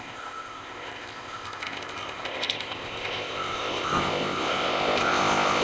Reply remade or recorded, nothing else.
remade